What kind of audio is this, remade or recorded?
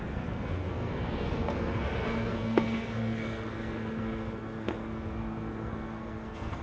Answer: remade